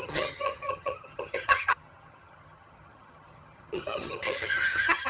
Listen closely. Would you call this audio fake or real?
fake